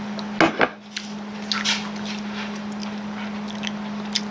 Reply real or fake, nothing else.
real